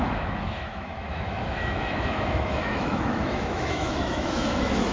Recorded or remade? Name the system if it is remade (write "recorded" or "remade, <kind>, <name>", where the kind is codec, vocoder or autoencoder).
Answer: remade, autoencoder, DAC-VAE